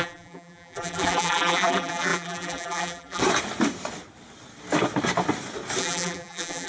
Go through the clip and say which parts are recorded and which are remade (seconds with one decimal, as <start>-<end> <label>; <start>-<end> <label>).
0.0-3.2 remade; 3.2-5.8 recorded; 5.8-6.7 remade